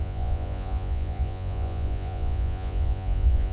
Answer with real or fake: fake